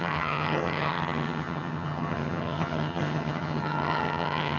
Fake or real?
fake